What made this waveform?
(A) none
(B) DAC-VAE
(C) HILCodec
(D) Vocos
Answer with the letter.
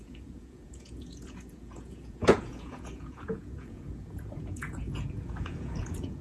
D